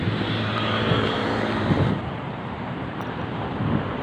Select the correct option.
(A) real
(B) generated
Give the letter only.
B